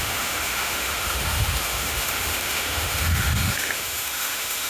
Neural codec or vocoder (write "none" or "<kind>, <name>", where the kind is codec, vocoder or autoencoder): autoencoder, DAC-VAE